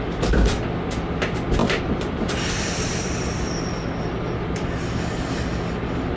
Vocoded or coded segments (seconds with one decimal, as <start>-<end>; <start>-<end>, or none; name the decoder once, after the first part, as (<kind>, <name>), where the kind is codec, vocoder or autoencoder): 1.6-3.6 (vocoder, BigVGAN v2)